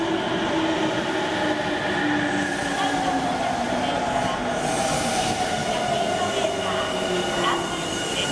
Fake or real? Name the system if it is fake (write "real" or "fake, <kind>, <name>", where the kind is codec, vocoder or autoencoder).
real